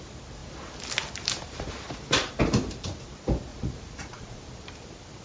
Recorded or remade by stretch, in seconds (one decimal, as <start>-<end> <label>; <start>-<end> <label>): 0.0-3.5 recorded; 3.5-4.4 remade; 4.4-5.2 recorded